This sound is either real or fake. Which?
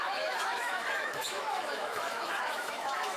fake